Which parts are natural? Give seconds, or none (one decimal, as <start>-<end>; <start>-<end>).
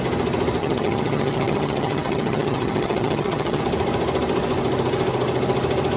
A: 0.0-0.6; 3.6-6.0